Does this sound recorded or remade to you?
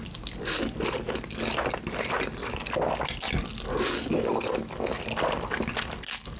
recorded